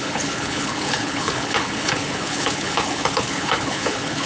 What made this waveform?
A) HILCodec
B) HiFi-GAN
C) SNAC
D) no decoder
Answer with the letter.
A